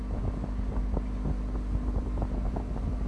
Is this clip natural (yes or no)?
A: yes